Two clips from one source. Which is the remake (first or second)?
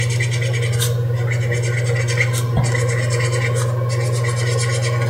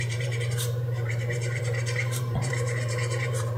second